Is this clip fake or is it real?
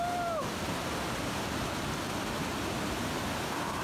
real